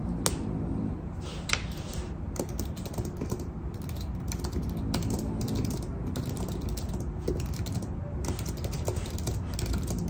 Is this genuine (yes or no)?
yes